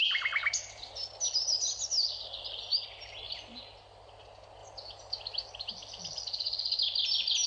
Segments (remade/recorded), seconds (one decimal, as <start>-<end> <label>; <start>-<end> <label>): 0.0-7.5 recorded